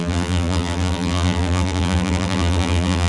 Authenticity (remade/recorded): remade